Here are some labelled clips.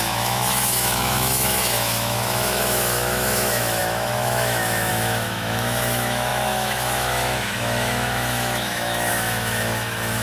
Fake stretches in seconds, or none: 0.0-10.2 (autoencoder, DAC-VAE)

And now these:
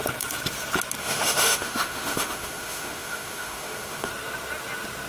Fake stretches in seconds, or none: 1.0-4.1 (autoencoder, DAC-VAE)

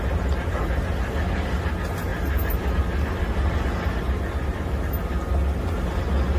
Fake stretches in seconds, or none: none

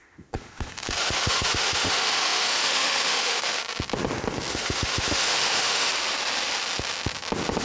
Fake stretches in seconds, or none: 0.0-3.6 (autoencoder, DAC-VAE); 4.5-5.9

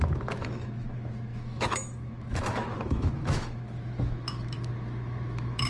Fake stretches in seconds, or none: 0.0-5.7 (autoencoder, DAC-VAE)

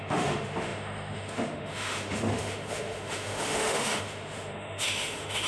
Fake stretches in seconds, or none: 0.0-5.5 (autoencoder, DAC-VAE)

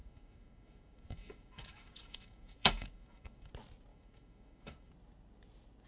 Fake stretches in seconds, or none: 0.0-3.5 (autoencoder, DAC-VAE); 3.9-4.9